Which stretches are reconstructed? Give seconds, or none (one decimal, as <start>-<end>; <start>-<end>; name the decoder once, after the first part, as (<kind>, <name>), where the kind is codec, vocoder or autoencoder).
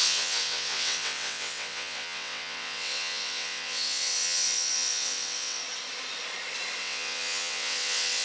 0.0-5.6 (vocoder, WaveNeXt); 6.8-8.2